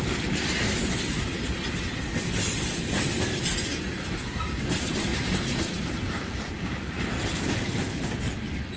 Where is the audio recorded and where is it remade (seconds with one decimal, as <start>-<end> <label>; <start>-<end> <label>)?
0.0-5.1 recorded; 5.1-7.7 remade; 7.7-8.8 recorded